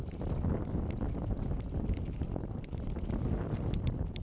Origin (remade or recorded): recorded